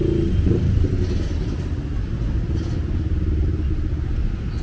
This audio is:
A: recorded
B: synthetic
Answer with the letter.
A